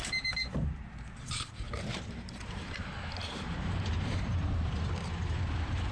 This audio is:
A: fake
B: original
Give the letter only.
A